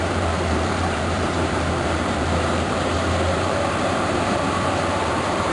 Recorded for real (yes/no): no